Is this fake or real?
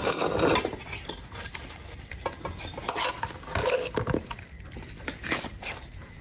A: real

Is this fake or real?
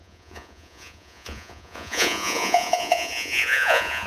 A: fake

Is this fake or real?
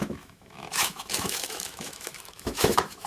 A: fake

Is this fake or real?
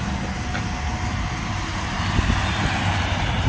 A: real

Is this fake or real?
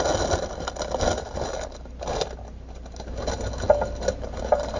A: real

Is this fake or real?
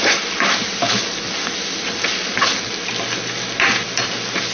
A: real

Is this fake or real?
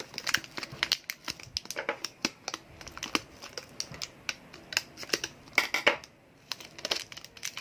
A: real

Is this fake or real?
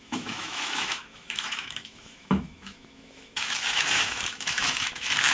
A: fake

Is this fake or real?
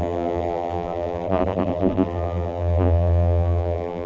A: fake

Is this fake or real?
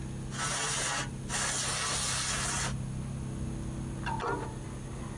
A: real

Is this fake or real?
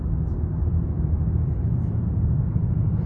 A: fake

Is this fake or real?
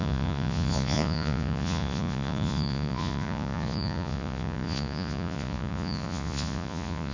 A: fake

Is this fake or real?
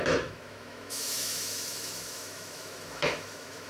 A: fake